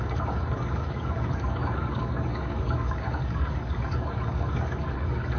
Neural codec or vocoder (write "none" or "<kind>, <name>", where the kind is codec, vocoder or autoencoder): codec, DAC